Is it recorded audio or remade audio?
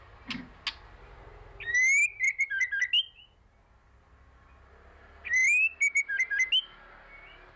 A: recorded